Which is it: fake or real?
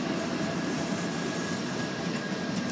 real